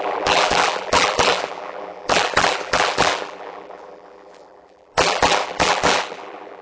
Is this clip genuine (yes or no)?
no